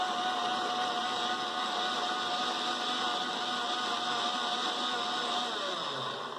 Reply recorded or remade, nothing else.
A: recorded